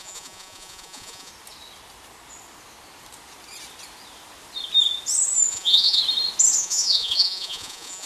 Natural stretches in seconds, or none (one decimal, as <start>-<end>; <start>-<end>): 1.3-5.5; 6.0-6.6